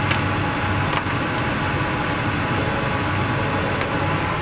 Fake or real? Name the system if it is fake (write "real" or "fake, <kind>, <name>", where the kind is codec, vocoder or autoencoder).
real